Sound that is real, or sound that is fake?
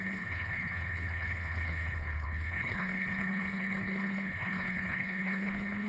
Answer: fake